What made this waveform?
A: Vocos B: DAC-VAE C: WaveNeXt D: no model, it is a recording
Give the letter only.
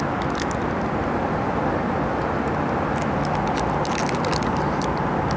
D